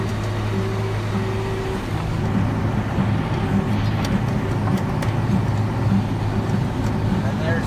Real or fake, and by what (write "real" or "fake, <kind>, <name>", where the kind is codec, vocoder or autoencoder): real